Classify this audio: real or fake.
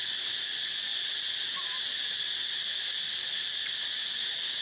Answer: real